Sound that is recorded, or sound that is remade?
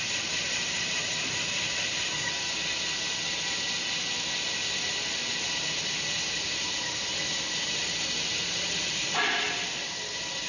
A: recorded